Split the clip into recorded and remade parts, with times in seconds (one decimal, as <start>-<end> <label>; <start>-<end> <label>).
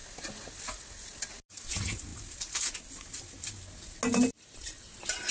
0.0-5.3 recorded